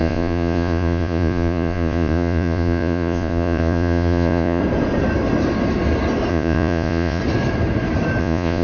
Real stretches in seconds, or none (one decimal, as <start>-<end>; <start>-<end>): 4.6-6.3; 7.2-8.2